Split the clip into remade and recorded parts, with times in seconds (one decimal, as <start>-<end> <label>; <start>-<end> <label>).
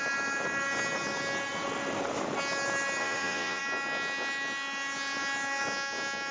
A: 0.0-3.0 recorded; 3.0-3.6 remade; 3.6-6.3 recorded